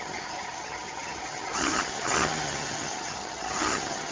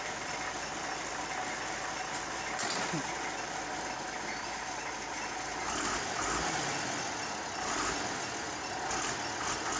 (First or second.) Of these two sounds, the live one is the second